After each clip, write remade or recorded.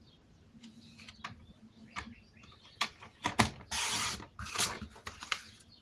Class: recorded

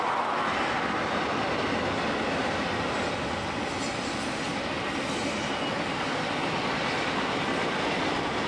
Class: recorded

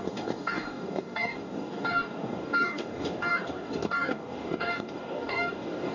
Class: remade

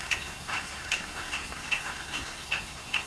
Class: remade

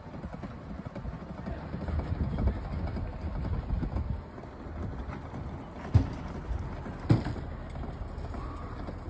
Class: recorded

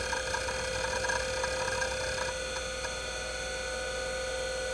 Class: recorded